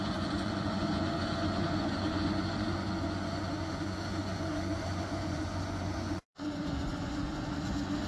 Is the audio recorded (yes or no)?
no